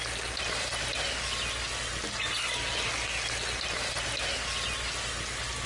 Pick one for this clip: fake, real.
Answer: real